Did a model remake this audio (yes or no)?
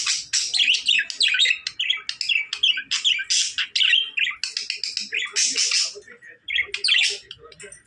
no